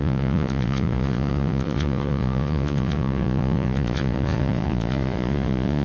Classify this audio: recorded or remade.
remade